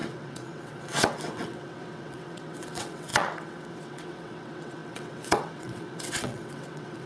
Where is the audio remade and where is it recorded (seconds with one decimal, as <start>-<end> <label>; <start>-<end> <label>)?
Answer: 0.0-7.1 remade